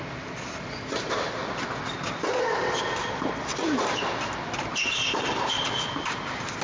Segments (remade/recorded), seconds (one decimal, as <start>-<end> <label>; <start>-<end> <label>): 0.0-6.6 recorded